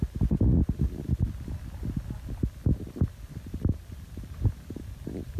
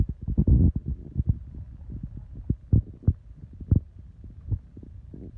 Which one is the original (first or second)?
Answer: second